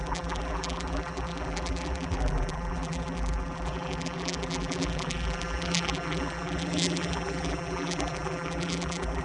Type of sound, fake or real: fake